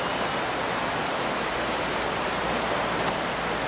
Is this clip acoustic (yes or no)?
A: yes